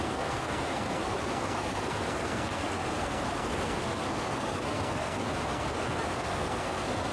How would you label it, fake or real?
fake